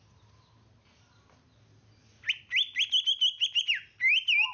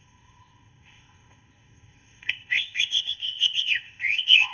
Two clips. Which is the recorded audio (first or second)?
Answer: first